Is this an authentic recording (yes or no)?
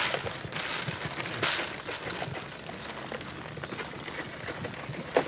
yes